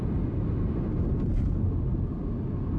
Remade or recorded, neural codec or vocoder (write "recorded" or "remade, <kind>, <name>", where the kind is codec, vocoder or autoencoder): recorded